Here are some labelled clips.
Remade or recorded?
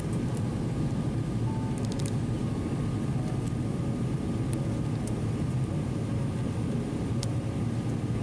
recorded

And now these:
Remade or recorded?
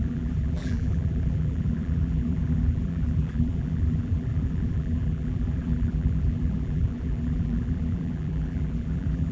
remade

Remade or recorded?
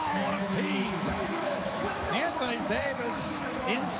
remade